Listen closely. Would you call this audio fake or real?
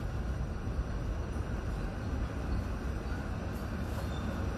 fake